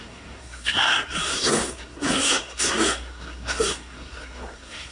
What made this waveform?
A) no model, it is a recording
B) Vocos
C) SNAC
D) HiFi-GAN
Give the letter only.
C